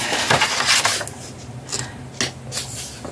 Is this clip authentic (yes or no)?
yes